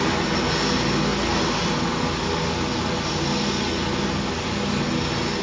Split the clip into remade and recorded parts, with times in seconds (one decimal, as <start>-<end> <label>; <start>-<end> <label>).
0.0-5.4 recorded